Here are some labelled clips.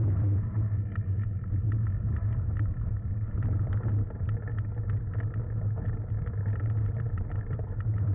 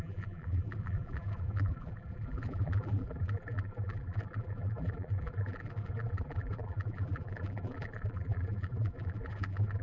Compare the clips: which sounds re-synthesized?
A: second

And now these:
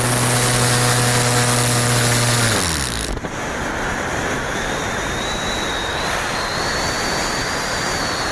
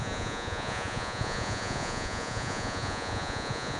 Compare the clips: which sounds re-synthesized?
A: second